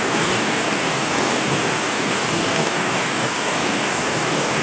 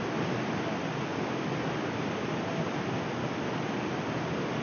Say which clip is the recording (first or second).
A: second